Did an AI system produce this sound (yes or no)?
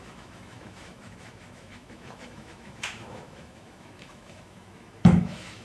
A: yes